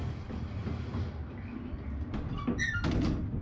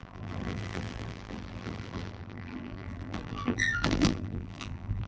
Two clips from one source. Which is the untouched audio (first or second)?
first